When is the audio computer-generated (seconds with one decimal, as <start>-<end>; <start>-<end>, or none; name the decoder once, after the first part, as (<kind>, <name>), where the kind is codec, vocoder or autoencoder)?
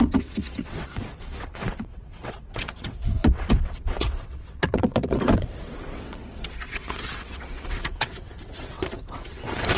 0.0-9.8 (vocoder, WaveNeXt)